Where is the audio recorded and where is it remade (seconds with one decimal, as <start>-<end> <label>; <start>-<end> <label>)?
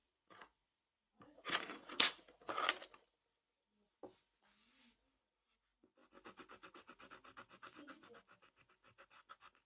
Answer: 0.0-2.5 remade; 2.5-9.7 recorded